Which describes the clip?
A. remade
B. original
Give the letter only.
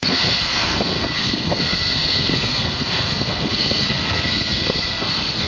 A